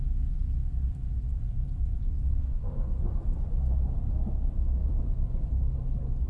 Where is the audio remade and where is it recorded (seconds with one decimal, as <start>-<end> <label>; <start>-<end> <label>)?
0.0-1.3 recorded; 1.3-2.4 remade; 2.4-4.8 recorded; 4.8-5.5 remade; 5.5-6.3 recorded